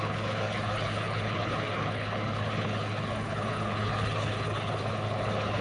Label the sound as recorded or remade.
remade